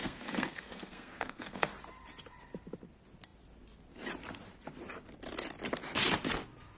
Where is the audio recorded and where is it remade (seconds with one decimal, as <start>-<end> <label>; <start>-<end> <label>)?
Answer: 0.0-1.7 remade; 1.7-6.8 recorded